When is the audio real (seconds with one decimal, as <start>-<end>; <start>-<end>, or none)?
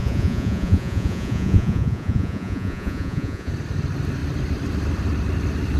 3.5-5.8